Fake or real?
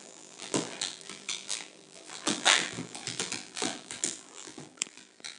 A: fake